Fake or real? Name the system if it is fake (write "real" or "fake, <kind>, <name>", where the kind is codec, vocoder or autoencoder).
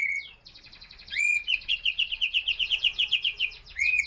fake, vocoder, Vocos